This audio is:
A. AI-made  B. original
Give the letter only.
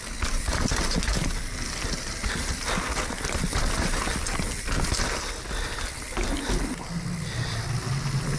B